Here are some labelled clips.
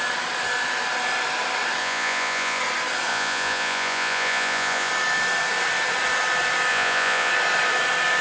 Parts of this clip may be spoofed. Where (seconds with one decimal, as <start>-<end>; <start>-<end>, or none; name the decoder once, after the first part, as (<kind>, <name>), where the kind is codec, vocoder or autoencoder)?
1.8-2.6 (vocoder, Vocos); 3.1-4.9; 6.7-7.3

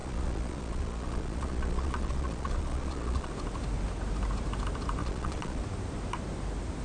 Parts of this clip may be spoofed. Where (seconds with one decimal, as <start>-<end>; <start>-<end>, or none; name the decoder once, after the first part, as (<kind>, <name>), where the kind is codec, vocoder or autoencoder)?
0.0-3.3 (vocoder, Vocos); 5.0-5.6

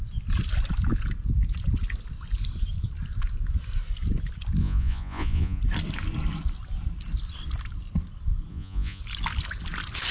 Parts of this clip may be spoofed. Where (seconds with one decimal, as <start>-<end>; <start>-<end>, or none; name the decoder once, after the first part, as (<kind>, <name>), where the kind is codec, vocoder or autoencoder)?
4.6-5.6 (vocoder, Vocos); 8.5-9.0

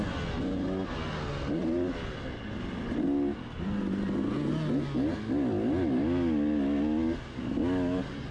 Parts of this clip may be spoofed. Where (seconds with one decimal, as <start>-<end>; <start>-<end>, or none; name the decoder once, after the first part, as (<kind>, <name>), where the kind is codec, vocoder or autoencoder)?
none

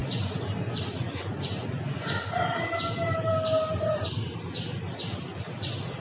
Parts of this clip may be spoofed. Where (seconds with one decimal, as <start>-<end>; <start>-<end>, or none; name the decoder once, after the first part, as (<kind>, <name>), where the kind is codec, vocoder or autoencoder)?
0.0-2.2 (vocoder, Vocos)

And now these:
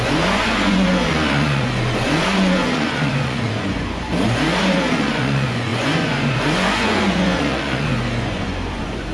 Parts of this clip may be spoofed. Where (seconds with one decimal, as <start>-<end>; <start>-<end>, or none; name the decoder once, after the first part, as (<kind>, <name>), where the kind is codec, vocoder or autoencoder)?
0.0-9.1 (vocoder, Vocos)